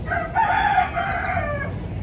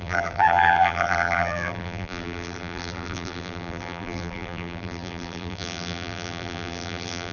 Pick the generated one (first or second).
second